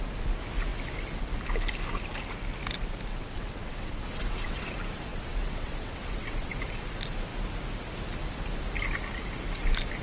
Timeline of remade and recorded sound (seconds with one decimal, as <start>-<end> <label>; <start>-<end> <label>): 0.0-3.1 recorded; 3.1-4.6 remade; 4.6-5.1 recorded; 5.1-6.6 remade; 6.6-10.0 recorded